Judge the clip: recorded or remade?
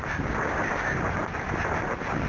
remade